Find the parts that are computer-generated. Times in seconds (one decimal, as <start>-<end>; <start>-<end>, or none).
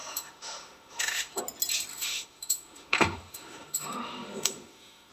0.0-1.4; 1.9-5.1